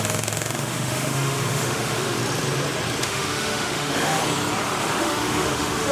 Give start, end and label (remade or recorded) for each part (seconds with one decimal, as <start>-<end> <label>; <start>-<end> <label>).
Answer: 0.0-2.2 remade; 2.2-3.0 recorded; 3.0-4.2 remade; 4.2-4.8 recorded; 4.8-5.9 remade